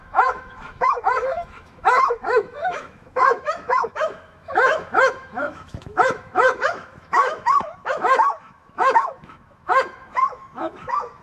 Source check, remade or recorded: remade